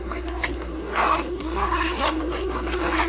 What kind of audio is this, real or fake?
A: fake